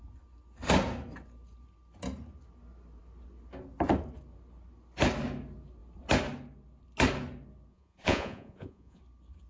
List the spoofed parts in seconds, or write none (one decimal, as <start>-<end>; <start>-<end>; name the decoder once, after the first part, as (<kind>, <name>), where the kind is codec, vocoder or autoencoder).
7.7-9.0 (vocoder, Vocos)

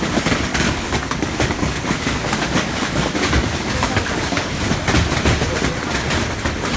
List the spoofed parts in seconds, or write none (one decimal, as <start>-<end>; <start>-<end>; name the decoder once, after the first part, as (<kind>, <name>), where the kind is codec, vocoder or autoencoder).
0.5-4.6 (codec, DAC)

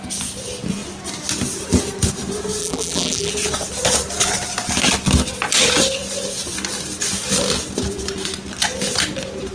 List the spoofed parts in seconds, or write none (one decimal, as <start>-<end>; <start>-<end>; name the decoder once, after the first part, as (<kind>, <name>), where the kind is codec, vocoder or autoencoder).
2.6-3.3 (vocoder, BigVGAN v2)

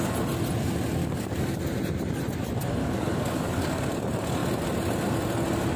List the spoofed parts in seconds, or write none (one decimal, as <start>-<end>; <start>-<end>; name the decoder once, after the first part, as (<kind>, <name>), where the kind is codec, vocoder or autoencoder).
1.0-1.6 (codec, DAC); 2.8-3.8

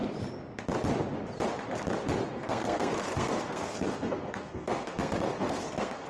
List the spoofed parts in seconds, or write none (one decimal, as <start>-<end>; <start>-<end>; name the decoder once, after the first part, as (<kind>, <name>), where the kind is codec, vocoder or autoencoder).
2.3-6.1 (codec, SNAC)

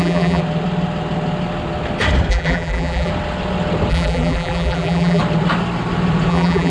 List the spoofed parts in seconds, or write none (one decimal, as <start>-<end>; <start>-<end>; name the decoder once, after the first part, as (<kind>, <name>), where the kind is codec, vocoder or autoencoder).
0.0-0.4 (vocoder, BigVGAN v2); 2.3-3.1; 3.9-5.2; 6.3-6.7

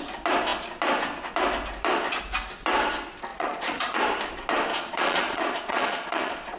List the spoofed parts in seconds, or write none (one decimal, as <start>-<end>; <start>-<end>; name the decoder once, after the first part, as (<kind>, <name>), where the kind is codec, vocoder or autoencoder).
3.3-4.0 (vocoder, Vocos); 4.7-6.6

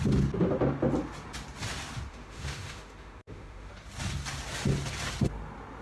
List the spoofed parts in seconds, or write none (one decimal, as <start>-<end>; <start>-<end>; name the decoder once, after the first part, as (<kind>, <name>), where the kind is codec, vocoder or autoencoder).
2.1-3.7 (autoencoder, DAC-VAE)